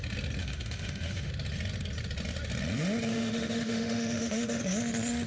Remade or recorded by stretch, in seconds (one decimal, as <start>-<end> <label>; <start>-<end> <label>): 0.0-0.4 recorded; 0.4-1.3 remade; 1.3-3.1 recorded; 3.1-4.6 remade; 4.6-5.3 recorded

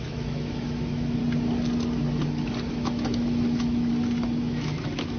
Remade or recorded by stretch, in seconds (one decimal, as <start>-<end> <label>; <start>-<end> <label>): 0.0-1.2 remade; 1.2-2.7 recorded; 2.7-3.9 remade; 3.9-4.4 recorded; 4.4-5.2 remade